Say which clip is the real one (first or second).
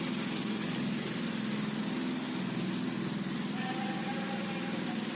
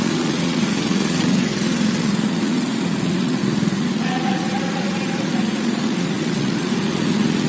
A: first